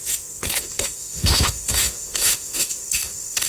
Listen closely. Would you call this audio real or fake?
fake